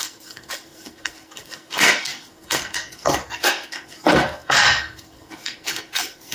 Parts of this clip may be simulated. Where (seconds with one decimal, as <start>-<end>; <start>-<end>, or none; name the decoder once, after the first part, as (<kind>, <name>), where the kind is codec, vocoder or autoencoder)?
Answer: 0.0-6.3 (codec, SNAC)

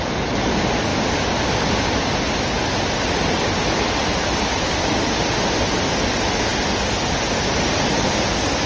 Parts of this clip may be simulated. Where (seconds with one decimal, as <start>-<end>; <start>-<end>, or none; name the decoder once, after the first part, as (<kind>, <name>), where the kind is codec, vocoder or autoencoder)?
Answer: none

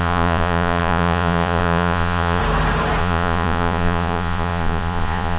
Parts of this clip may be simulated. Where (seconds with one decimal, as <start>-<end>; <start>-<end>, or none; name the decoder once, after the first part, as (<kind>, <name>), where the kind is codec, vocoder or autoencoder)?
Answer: 0.0-2.4 (vocoder, Vocos); 3.0-5.4

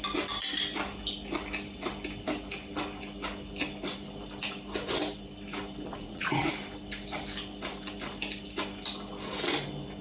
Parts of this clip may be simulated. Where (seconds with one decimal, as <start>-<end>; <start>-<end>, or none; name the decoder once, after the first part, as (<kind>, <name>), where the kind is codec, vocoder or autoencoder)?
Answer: 5.9-6.5 (vocoder, Vocos)

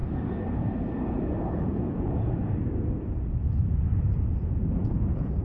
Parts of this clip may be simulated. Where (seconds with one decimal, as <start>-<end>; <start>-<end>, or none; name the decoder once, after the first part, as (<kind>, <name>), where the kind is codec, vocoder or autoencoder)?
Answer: 1.5-2.4 (vocoder, Vocos); 4.2-5.4

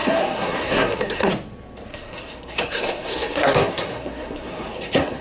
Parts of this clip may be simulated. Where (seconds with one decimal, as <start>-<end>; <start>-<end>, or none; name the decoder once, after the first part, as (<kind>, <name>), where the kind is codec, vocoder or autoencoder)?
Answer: 0.0-1.3 (codec, SNAC); 1.9-5.2

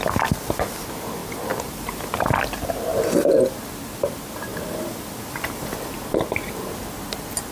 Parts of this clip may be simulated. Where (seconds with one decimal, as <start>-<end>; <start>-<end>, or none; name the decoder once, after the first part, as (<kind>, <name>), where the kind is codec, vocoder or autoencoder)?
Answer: 1.2-2.0 (vocoder, BigVGAN v2); 2.9-3.4; 4.5-6.7